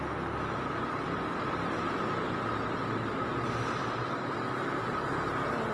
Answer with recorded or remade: recorded